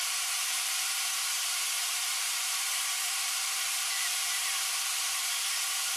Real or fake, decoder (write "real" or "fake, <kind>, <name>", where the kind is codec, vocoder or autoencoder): fake, vocoder, BigVGAN v2